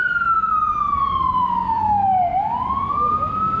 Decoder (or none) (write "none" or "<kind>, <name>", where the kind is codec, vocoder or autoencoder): none